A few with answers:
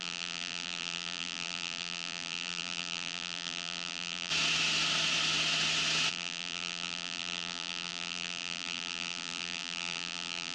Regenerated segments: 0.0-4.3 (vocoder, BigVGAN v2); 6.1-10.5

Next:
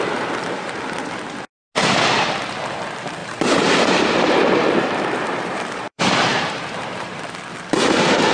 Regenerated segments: 3.2-7.2 (vocoder, BigVGAN v2)

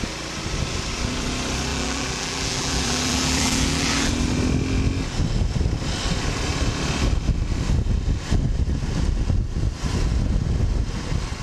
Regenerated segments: 1.7-4.1 (vocoder, BigVGAN v2)

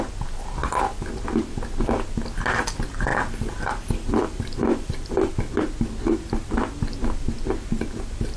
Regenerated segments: 3.1-5.3 (vocoder, BigVGAN v2)

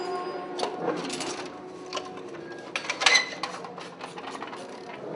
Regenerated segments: 0.7-1.3 (vocoder, BigVGAN v2)

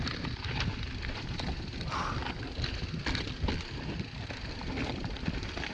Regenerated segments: 0.0-2.2 (vocoder, BigVGAN v2); 4.5-5.7

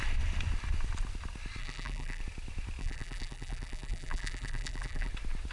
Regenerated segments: 1.6-2.2 (vocoder, BigVGAN v2); 2.8-5.1

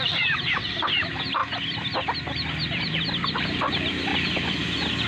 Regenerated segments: 0.0-1.4 (vocoder, BigVGAN v2); 3.4-4.1